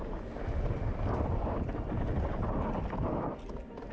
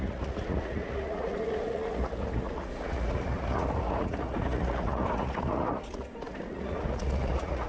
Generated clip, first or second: second